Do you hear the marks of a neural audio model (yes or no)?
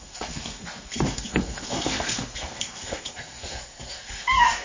yes